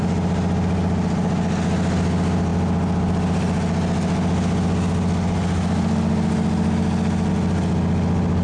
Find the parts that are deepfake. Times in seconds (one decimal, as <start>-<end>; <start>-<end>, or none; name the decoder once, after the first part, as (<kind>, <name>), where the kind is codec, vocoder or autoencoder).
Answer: none